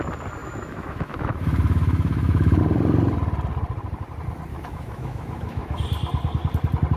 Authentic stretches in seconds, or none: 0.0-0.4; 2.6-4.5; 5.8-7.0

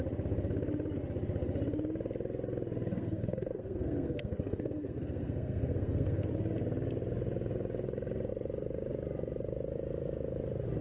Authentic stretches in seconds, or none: 0.0-2.9; 6.3-10.8

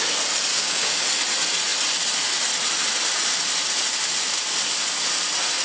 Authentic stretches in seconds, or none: 0.0-0.5; 1.0-5.6

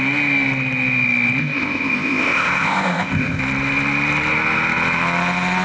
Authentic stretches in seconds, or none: 0.0-1.4; 3.4-5.6

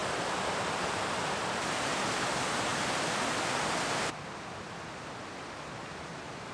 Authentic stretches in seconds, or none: 0.0-6.5

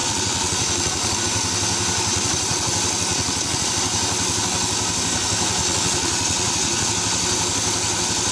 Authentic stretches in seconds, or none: 1.2-2.1; 2.7-3.1; 3.7-5.6; 6.9-8.3

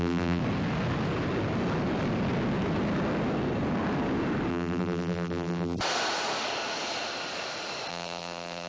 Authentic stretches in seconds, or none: 0.4-4.5; 5.8-7.9

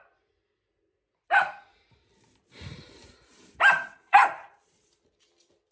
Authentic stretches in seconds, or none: 0.0-1.7; 5.1-5.7